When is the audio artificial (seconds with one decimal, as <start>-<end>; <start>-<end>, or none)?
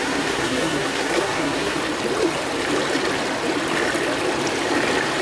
0.0-1.8